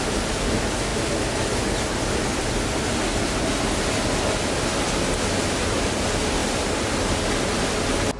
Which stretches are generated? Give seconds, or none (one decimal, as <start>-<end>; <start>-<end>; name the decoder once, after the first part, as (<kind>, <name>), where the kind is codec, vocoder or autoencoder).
6.4-7.3 (vocoder, BigVGAN v2)